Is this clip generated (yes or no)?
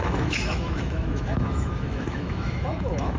yes